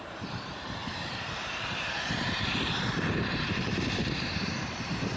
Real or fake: fake